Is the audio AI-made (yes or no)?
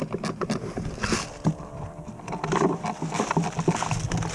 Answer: no